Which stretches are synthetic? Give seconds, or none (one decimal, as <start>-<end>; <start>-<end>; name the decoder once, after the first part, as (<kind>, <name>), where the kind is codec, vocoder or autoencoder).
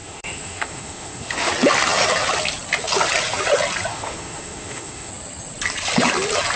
0.0-1.5 (autoencoder, DAC-VAE); 3.9-5.1